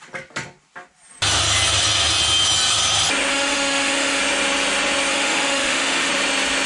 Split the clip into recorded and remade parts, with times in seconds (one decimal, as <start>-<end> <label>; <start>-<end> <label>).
0.0-3.3 recorded; 3.3-4.2 remade; 4.2-5.1 recorded; 5.1-6.1 remade; 6.1-6.7 recorded